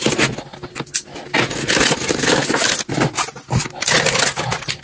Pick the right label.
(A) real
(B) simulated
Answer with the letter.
A